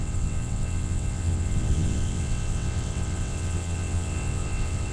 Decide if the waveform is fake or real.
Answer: fake